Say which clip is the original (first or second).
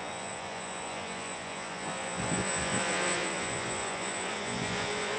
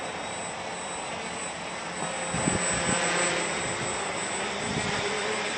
second